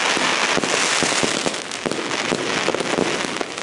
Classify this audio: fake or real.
real